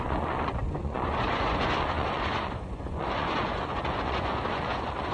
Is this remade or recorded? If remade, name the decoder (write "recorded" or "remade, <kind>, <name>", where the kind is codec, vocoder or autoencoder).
remade, vocoder, Vocos